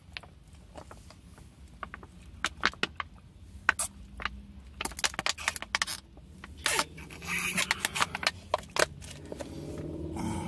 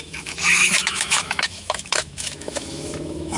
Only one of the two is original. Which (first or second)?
first